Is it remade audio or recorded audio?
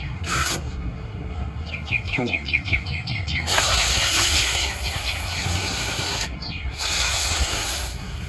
remade